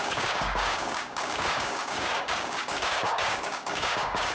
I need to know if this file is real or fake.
fake